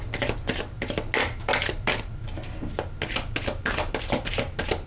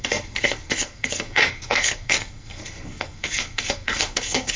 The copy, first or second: second